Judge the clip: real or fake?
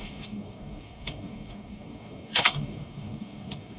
fake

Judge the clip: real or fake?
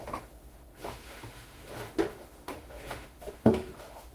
fake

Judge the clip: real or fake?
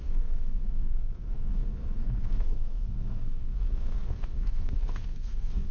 fake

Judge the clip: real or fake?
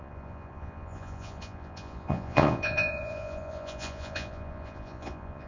fake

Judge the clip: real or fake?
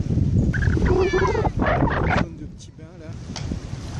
real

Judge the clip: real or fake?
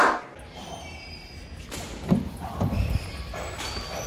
real